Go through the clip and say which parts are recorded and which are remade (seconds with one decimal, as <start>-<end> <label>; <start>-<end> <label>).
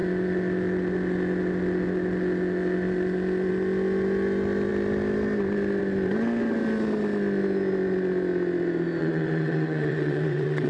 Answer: 0.0-9.0 recorded; 9.0-10.7 remade